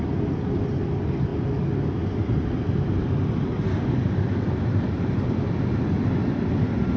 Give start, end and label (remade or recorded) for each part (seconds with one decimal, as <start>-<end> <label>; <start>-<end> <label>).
0.0-7.0 recorded